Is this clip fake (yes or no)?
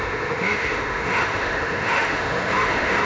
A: yes